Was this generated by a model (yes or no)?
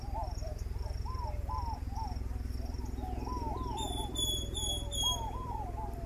yes